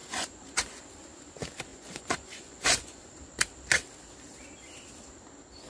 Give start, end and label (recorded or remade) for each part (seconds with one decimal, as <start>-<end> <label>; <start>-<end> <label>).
0.0-0.8 remade; 0.8-1.7 recorded; 1.7-3.0 remade; 3.0-5.7 recorded